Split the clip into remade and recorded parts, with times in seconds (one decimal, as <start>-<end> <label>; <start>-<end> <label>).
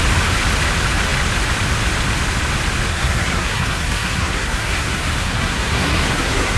0.0-2.9 recorded; 2.9-6.6 remade